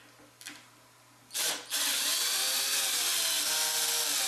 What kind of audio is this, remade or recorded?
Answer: recorded